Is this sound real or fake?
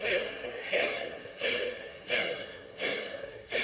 fake